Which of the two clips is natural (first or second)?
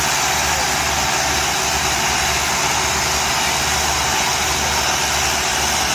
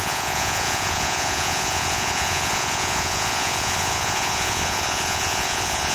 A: first